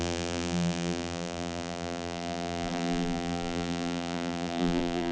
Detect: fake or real fake